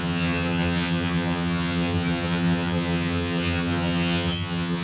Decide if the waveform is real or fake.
fake